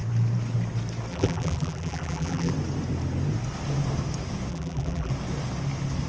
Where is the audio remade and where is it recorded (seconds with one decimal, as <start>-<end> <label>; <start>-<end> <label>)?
0.0-1.1 recorded; 1.1-2.5 remade; 2.5-4.5 recorded; 4.5-5.1 remade; 5.1-6.1 recorded